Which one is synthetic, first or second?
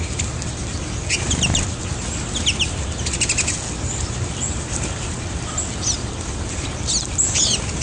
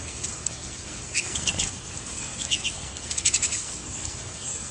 second